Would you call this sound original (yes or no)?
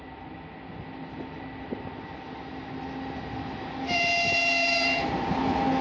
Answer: yes